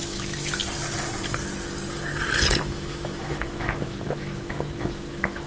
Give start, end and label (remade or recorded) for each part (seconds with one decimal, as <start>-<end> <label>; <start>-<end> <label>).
0.0-0.6 remade; 0.6-2.6 recorded; 2.6-5.5 remade